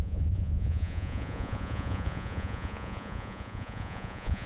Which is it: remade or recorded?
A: remade